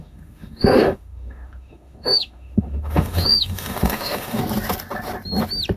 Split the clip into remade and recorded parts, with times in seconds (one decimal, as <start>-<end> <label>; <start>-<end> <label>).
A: 0.0-4.4 remade; 4.4-5.8 recorded